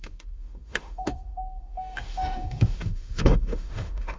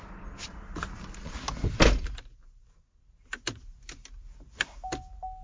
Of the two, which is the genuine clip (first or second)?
second